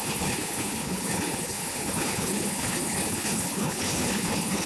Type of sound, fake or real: fake